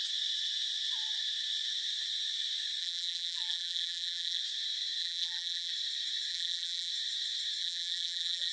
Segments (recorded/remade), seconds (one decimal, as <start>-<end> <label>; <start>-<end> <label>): 0.0-2.8 recorded; 2.8-4.4 remade; 4.4-5.0 recorded; 5.0-5.7 remade; 5.7-6.3 recorded; 6.3-6.9 remade; 6.9-7.6 recorded; 7.6-8.5 remade